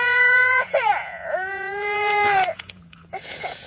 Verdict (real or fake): fake